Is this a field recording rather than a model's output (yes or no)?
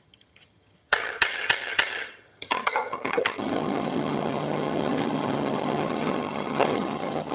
no